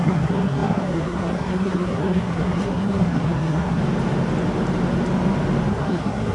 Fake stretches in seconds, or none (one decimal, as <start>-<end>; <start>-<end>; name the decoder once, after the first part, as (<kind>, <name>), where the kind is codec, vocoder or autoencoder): 0.0-3.8 (codec, SNAC); 5.7-6.3